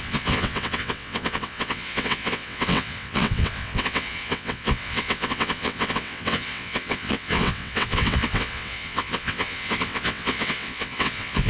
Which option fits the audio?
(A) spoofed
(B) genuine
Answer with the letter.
A